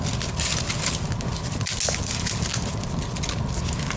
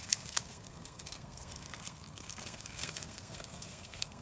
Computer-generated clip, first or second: second